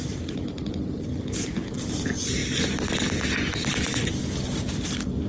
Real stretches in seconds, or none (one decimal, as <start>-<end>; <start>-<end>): 0.0-5.3